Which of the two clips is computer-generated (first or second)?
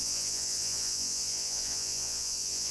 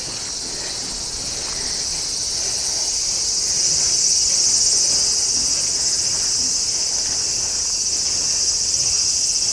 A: first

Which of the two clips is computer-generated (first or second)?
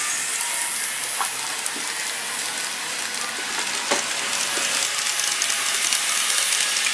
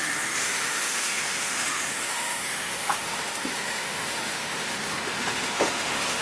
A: second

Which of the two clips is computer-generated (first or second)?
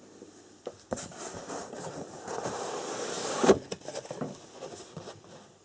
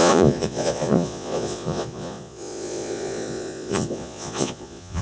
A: second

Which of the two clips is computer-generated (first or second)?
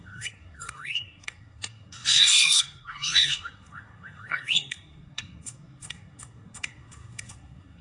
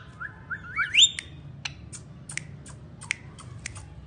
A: first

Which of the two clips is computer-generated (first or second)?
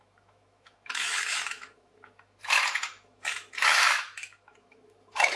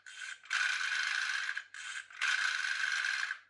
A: first